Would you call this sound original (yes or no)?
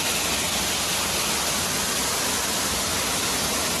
yes